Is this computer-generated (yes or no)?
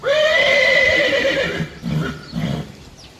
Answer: no